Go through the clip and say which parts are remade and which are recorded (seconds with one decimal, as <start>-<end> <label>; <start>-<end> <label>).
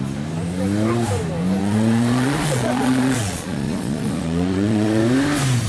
0.0-1.6 recorded; 1.6-5.0 remade; 5.0-5.7 recorded